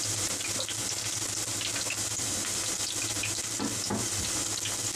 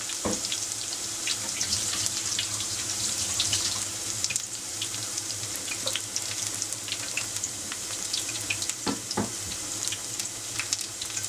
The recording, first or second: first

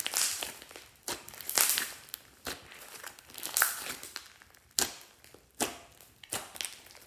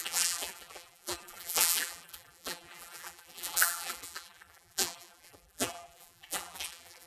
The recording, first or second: first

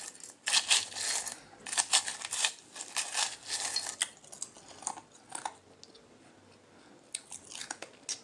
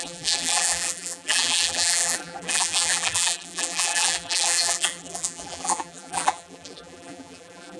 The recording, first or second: first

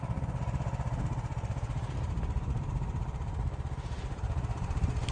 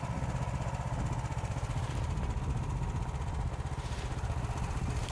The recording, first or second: second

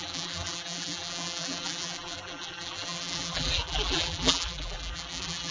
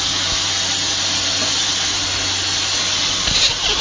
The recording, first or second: second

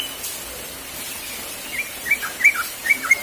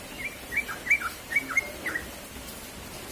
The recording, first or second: second